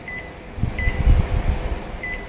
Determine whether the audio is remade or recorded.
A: recorded